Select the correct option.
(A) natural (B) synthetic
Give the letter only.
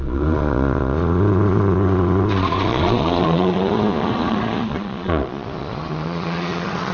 B